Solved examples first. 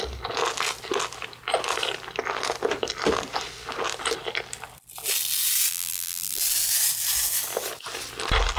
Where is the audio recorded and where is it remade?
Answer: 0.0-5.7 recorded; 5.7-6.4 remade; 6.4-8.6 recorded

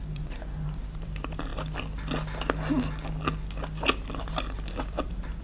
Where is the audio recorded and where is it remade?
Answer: 0.0-1.5 remade; 1.5-4.7 recorded; 4.7-5.4 remade

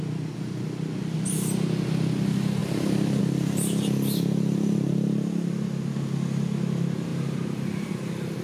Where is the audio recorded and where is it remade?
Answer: 0.0-2.6 recorded; 2.6-3.2 remade; 3.2-7.1 recorded; 7.1-7.9 remade; 7.9-8.4 recorded

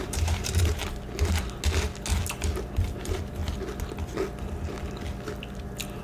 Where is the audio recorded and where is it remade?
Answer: 0.0-0.8 remade; 0.8-2.8 recorded; 2.8-3.4 remade; 3.4-6.0 recorded

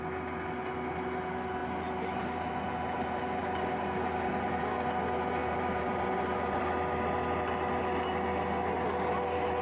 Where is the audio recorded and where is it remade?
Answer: 0.0-3.4 recorded; 3.4-4.6 remade; 4.6-5.4 recorded; 5.4-6.6 remade; 6.6-9.6 recorded

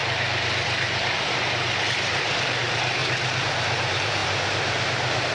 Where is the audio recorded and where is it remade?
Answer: 0.0-3.0 remade; 3.0-3.5 recorded; 3.5-5.3 remade

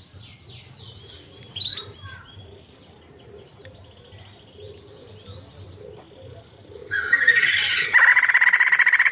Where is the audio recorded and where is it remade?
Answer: 0.0-1.7 recorded; 1.7-2.3 remade; 2.3-6.8 recorded; 6.8-8.1 remade; 8.1-9.1 recorded